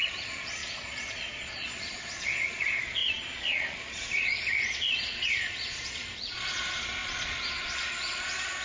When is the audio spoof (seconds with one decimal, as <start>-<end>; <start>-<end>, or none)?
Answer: 0.0-8.6